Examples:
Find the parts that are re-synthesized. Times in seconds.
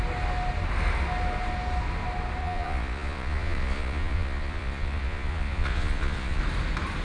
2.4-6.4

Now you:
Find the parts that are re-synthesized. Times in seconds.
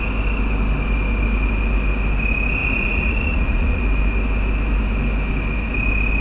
2.6-3.8